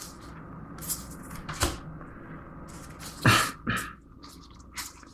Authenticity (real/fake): real